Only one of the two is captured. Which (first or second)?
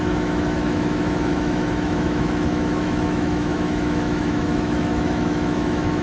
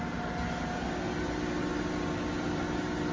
second